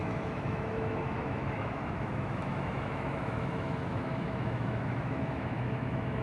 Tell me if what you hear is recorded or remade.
remade